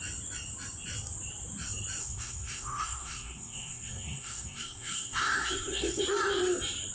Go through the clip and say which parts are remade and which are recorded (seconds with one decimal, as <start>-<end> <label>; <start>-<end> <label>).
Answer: 0.0-2.0 recorded; 2.0-6.0 remade; 6.0-6.9 recorded